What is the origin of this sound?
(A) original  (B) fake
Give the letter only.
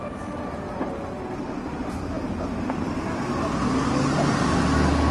A